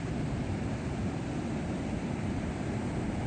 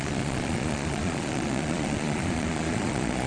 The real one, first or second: first